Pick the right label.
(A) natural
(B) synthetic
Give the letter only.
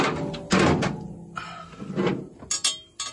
A